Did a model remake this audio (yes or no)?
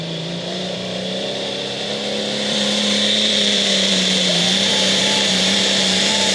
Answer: yes